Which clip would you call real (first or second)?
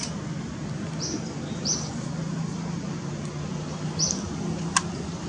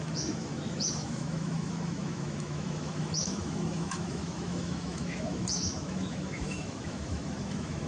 first